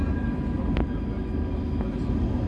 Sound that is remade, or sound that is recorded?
recorded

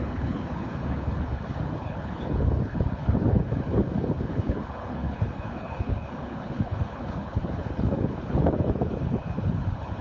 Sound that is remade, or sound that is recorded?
remade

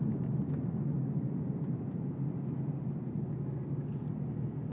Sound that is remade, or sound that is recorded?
recorded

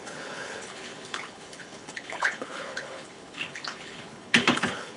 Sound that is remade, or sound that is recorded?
remade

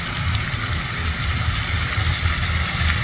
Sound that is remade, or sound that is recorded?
recorded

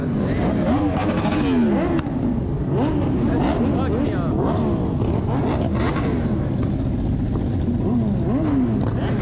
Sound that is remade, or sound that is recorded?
recorded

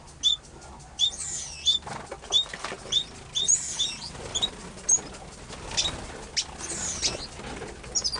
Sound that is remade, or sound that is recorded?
recorded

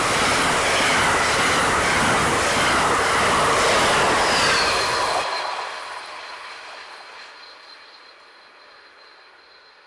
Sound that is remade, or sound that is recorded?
recorded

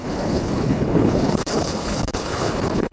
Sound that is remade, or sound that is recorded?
remade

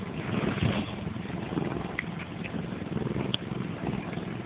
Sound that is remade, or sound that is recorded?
recorded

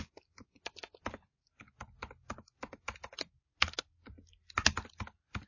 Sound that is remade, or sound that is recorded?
recorded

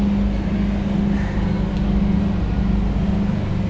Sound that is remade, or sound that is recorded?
recorded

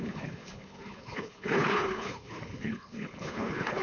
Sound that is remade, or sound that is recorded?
remade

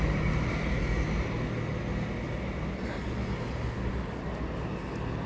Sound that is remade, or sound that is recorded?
recorded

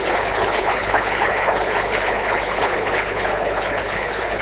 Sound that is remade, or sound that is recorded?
remade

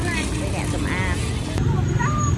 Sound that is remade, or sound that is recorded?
recorded